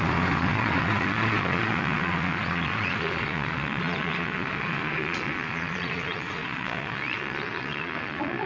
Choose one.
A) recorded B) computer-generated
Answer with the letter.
B